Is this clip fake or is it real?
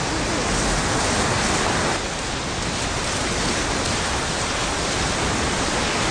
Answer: real